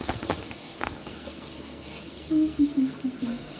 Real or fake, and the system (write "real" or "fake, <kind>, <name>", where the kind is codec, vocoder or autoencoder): fake, codec, SNAC